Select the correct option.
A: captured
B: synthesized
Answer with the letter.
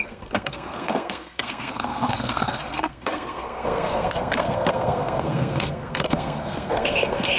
B